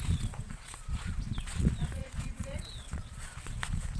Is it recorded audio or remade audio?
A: remade